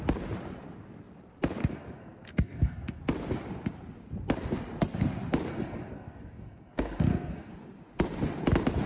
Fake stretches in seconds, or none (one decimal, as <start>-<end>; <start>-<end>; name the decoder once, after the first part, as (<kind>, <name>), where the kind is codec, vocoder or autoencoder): 1.6-3.0 (codec, SNAC); 5.5-7.5